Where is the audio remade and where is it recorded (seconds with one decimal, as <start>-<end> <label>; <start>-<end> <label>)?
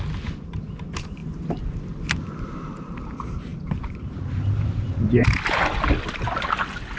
0.0-7.0 recorded